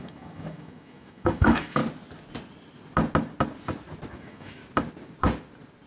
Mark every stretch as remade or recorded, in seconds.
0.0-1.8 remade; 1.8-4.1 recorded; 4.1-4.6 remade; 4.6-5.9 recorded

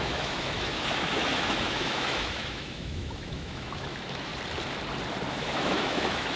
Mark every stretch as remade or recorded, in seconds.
0.0-4.3 remade; 4.3-5.3 recorded; 5.3-6.4 remade